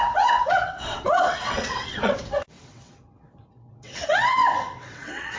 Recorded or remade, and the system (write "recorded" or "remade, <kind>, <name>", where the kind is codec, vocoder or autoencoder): remade, vocoder, WaveNeXt